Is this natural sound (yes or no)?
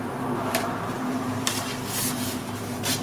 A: no